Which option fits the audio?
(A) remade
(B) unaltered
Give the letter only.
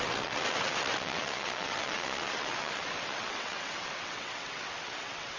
A